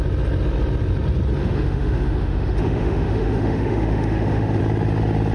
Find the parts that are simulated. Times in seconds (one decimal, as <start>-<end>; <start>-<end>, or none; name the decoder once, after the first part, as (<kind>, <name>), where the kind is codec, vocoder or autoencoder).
1.4-4.6 (autoencoder, DAC-VAE)